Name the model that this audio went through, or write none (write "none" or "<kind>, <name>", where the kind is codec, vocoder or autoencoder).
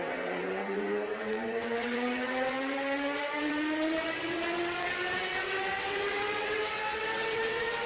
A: vocoder, WaveNeXt